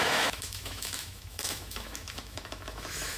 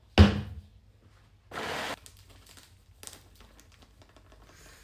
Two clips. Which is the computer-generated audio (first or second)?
first